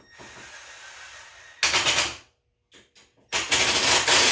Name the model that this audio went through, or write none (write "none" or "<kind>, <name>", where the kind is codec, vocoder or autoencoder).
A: none